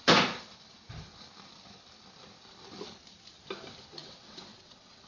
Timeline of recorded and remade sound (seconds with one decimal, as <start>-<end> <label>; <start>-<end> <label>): 0.0-4.0 recorded; 4.0-5.1 remade